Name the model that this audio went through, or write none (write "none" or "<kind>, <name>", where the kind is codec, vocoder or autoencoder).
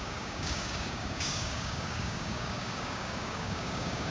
codec, DAC